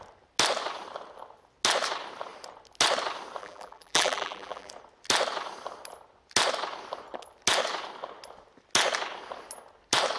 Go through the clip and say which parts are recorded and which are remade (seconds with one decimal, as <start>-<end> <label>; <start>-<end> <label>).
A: 0.0-3.4 recorded; 3.4-4.7 remade; 4.7-10.2 recorded